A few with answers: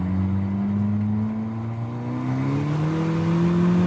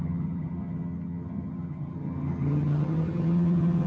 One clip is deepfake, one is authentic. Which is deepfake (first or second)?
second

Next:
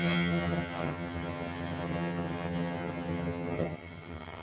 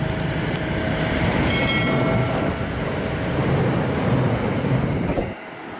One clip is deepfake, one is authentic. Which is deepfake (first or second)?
first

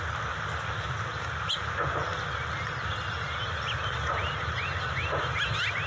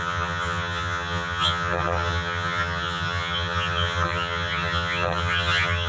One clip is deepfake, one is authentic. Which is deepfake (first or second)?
second